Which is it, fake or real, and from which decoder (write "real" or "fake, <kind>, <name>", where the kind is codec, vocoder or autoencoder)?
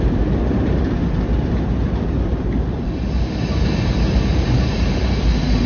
fake, vocoder, BigVGAN v2